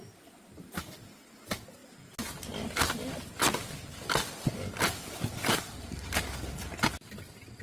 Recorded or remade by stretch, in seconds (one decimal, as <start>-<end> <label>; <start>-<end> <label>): 0.0-7.6 recorded